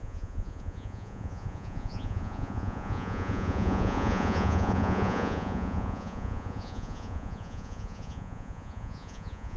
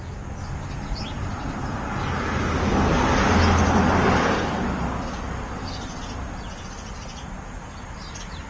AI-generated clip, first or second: first